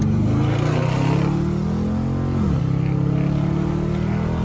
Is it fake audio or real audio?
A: real